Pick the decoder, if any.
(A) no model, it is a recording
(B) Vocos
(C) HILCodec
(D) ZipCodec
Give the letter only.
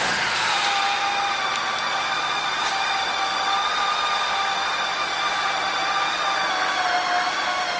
A